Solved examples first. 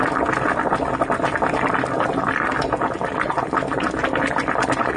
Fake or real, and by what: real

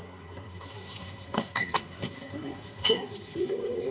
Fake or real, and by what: fake, codec, SNAC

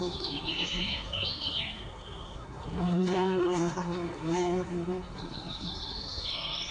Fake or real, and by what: fake, codec, SNAC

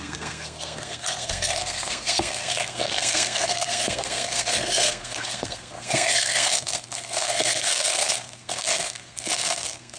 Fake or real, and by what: fake, codec, SNAC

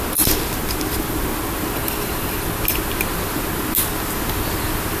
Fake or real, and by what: real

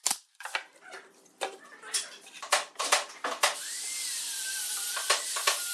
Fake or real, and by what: real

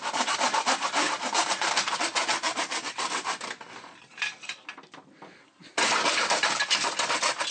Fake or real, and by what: real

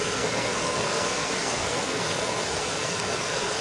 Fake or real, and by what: fake, codec, SNAC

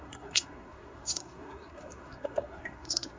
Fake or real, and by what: fake, codec, SNAC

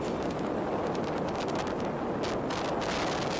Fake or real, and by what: real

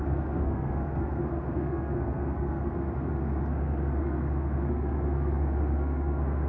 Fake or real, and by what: fake, codec, SNAC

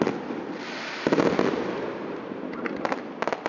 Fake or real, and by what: real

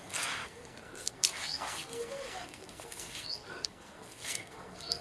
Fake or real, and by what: fake, codec, SNAC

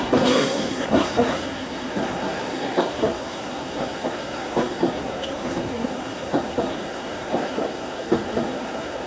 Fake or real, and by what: fake, codec, SNAC